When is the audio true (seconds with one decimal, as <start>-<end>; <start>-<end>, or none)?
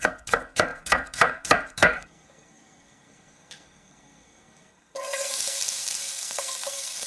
none